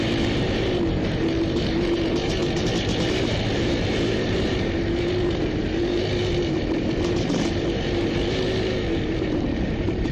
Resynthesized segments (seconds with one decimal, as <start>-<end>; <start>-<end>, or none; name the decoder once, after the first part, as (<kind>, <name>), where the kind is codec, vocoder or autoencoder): 0.0-2.4 (vocoder, BigVGAN v2); 3.1-10.1